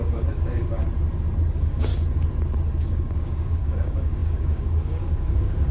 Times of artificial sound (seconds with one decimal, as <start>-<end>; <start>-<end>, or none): 0.0-0.8; 1.5-1.9; 2.8-5.7